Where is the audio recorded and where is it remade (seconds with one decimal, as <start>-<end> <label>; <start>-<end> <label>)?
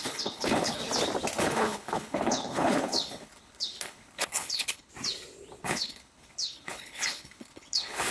0.0-0.8 remade; 0.8-1.4 recorded; 1.4-4.9 remade; 4.9-5.6 recorded; 5.6-8.1 remade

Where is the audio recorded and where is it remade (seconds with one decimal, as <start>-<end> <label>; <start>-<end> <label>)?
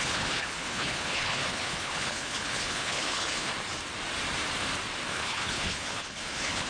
0.0-3.5 remade; 3.5-5.1 recorded; 5.1-6.7 remade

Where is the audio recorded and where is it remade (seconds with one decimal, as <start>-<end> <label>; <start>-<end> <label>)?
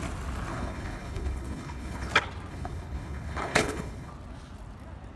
0.0-0.5 recorded; 0.5-2.1 remade; 2.1-2.5 recorded; 2.5-4.1 remade; 4.1-5.2 recorded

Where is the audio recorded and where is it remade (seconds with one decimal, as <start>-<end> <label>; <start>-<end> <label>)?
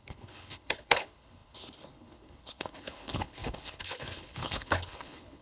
0.0-5.4 remade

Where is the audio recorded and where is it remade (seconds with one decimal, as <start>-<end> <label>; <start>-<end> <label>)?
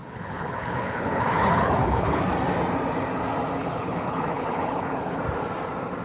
0.0-2.2 remade; 2.2-3.6 recorded; 3.6-5.2 remade; 5.2-6.0 recorded